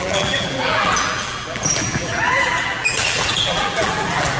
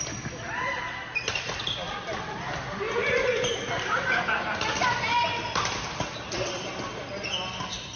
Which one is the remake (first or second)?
first